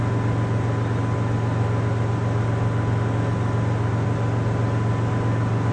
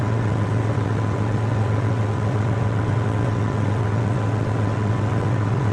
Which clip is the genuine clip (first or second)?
first